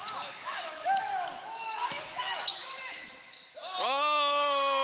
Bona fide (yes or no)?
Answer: no